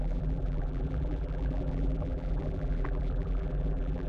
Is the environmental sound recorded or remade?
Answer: remade